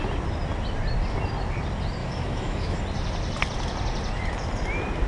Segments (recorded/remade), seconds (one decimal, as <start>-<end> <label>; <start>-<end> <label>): 0.0-2.0 recorded; 2.0-2.8 remade; 2.8-5.1 recorded

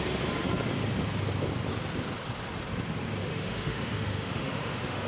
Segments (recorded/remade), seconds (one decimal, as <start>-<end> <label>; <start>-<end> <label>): 0.0-3.2 recorded; 3.2-5.1 remade

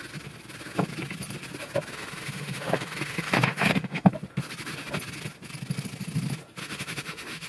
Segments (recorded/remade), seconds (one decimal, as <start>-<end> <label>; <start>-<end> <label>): 0.0-1.9 recorded; 1.9-4.1 remade; 4.1-6.6 recorded; 6.6-7.5 remade

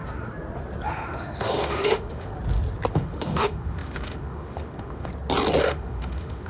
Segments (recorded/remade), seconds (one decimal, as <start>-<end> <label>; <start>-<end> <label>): 0.0-0.9 recorded; 0.9-2.3 remade; 2.3-2.9 recorded; 2.9-5.1 remade; 5.1-5.6 recorded; 5.6-6.5 remade

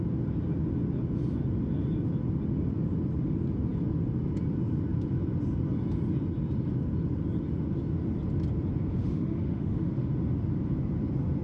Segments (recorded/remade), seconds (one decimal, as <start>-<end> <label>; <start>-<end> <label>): 0.0-9.0 recorded; 9.0-10.1 remade; 10.1-11.4 recorded

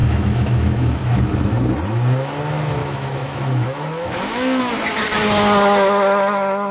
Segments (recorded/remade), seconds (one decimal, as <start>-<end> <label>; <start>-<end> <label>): 0.0-1.2 remade; 1.2-2.8 recorded; 2.8-4.6 remade; 4.6-6.7 recorded

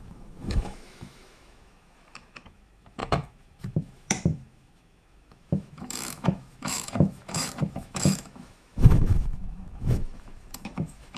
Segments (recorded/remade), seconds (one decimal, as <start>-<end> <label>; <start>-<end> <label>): 0.0-11.2 remade

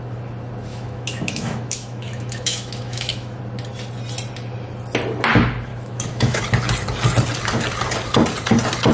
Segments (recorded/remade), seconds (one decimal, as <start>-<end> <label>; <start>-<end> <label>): 0.0-0.7 recorded; 0.7-3.4 remade; 3.4-5.7 recorded; 5.7-6.4 remade; 6.4-8.9 recorded